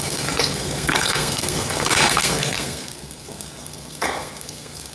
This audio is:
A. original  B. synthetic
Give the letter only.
B